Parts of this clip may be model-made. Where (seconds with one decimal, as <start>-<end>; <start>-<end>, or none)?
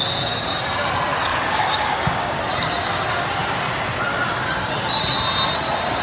1.3-2.4